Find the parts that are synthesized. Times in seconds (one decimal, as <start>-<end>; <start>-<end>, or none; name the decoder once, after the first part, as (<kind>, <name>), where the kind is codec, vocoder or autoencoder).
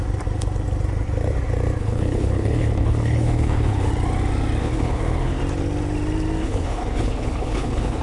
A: 1.8-3.9 (codec, HILCodec); 4.6-5.4; 6.4-8.0